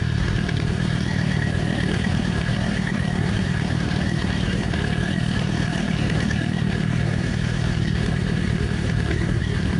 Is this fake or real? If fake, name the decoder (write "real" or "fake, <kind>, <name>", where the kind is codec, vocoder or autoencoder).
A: fake, codec, SNAC